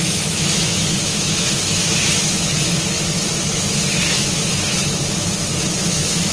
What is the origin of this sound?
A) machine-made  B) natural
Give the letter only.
A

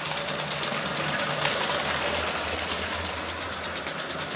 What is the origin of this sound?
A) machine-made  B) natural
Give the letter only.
B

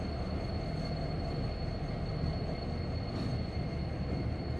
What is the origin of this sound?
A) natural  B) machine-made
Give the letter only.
A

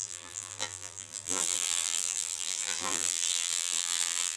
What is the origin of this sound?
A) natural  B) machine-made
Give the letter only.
B